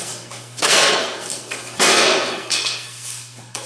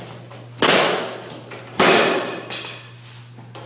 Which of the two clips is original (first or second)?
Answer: second